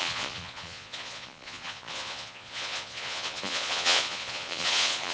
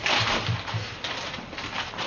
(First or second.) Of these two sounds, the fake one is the first